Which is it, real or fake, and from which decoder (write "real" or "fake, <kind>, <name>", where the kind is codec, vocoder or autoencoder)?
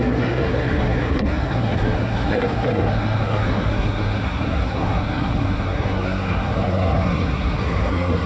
fake, codec, SNAC